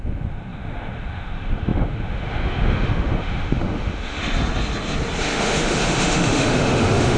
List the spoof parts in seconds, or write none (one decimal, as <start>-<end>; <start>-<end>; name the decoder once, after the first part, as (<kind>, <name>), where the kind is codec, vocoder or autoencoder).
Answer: 0.0-4.2 (autoencoder, DAC-VAE); 5.2-7.2